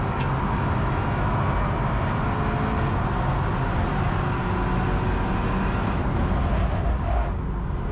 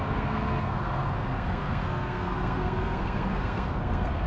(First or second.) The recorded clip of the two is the first